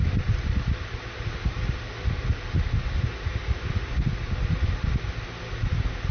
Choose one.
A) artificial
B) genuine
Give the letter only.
B